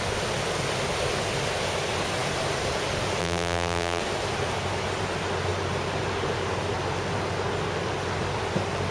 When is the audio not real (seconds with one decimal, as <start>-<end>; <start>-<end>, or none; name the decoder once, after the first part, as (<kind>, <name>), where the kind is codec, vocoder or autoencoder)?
3.2-4.0 (vocoder, BigVGAN v2)